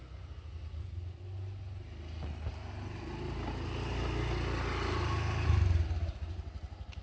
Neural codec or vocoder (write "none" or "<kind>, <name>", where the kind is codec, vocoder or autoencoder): none